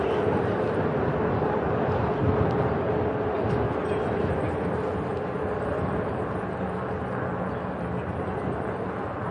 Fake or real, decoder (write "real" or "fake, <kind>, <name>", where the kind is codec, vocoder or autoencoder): real